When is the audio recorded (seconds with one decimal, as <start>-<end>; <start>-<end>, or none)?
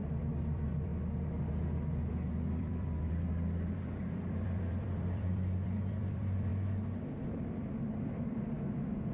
0.9-1.5; 6.5-7.2